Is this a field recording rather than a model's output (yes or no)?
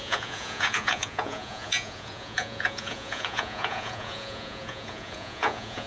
no